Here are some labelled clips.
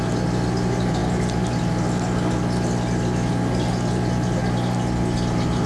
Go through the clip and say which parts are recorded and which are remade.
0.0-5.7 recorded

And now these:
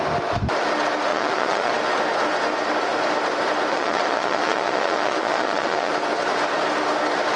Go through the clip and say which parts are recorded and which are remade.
0.0-1.1 recorded; 1.1-1.7 remade; 1.7-3.7 recorded; 3.7-5.9 remade; 5.9-7.4 recorded

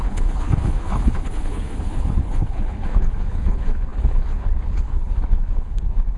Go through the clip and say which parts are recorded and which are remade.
0.0-6.2 remade

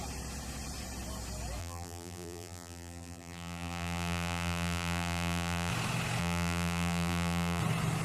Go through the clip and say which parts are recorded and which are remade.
0.0-1.6 recorded; 1.6-5.7 remade; 5.7-6.2 recorded; 6.2-7.6 remade; 7.6-8.0 recorded

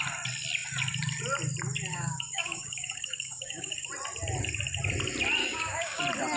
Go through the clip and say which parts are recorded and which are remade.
0.0-1.9 recorded; 1.9-3.9 remade; 3.9-5.4 recorded; 5.4-6.0 remade; 6.0-6.4 recorded

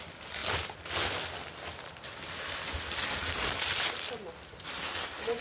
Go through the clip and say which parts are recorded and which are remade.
0.0-5.4 recorded